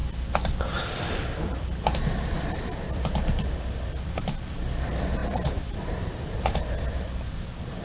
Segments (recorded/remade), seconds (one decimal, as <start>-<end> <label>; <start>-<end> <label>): 0.0-5.2 recorded; 5.2-6.9 remade; 6.9-7.8 recorded